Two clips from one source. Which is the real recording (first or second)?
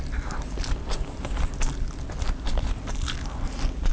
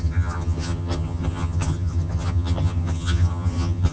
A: first